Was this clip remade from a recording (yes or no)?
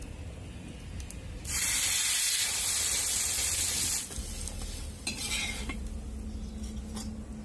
no